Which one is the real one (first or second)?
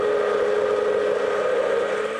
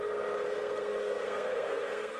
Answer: first